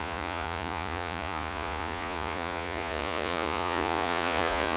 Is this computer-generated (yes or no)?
yes